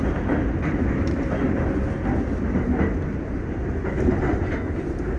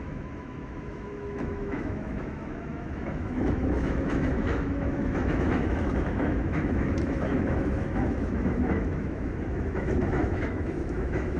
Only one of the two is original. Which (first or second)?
first